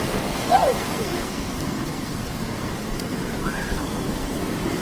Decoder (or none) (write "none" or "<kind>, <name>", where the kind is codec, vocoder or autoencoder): codec, SNAC